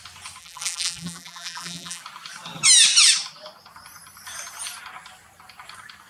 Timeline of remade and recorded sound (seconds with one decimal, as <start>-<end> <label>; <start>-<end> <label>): 0.0-0.4 recorded; 0.4-2.0 remade; 2.0-6.1 recorded